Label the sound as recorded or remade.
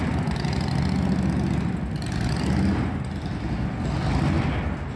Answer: recorded